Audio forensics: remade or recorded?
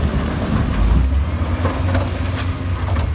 recorded